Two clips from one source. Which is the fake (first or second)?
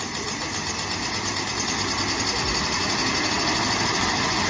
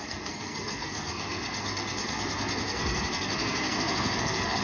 second